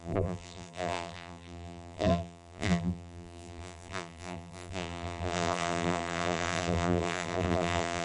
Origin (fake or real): fake